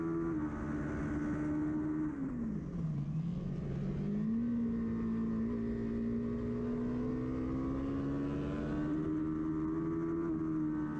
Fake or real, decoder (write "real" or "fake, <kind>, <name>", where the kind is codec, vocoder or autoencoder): real